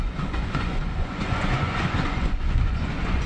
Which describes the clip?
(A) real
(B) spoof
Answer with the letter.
B